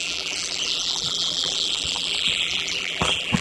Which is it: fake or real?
fake